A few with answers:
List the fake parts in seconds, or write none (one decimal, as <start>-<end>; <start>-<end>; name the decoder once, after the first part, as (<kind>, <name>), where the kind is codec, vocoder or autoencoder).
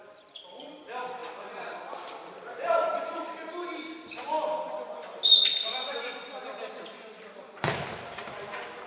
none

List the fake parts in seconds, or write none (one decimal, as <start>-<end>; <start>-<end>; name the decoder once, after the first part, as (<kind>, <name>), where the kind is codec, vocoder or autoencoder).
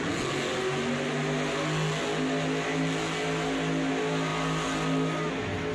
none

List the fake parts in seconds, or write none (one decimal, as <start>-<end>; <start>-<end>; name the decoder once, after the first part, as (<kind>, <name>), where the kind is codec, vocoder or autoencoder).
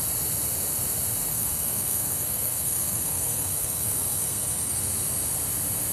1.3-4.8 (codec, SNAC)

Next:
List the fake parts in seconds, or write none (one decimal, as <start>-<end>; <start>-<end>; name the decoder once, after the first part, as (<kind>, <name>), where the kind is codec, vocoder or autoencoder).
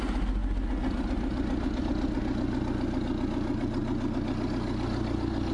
none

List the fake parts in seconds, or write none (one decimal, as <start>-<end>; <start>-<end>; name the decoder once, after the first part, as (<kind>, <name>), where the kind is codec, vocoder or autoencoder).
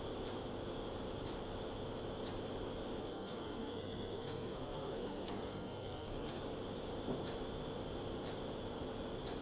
3.0-6.4 (codec, SNAC)